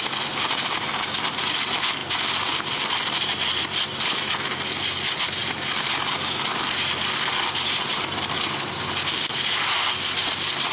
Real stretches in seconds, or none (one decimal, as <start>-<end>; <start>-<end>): 0.0-10.7